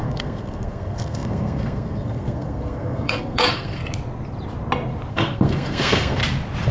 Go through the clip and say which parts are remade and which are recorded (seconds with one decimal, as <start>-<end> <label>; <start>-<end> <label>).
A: 0.0-3.8 remade; 3.8-5.1 recorded; 5.1-6.2 remade; 6.2-6.7 recorded